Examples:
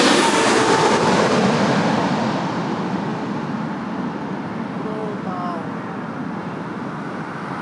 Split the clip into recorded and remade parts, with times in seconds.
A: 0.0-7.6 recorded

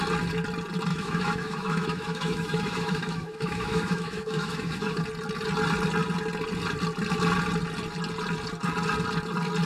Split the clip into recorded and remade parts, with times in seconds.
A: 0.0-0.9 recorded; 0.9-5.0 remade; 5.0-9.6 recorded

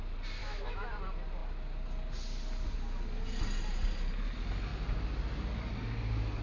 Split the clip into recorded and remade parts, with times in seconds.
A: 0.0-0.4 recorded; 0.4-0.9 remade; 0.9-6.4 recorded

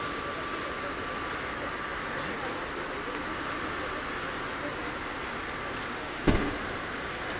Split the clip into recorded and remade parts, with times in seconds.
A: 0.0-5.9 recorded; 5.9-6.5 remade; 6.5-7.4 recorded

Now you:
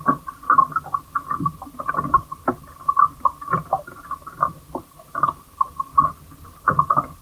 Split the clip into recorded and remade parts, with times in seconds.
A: 0.0-7.2 recorded

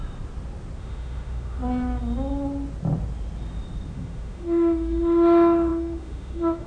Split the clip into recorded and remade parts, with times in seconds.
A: 0.0-0.8 recorded; 0.8-1.6 remade; 1.6-3.9 recorded; 3.9-6.7 remade

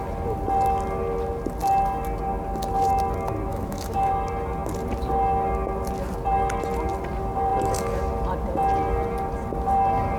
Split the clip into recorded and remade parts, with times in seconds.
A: 0.0-3.5 recorded; 3.5-4.1 remade; 4.1-10.2 recorded